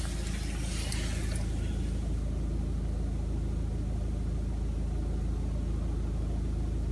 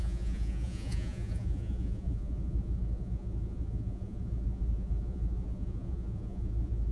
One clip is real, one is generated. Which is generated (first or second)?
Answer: second